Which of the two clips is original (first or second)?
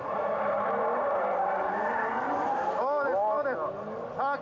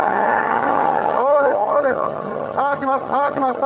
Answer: first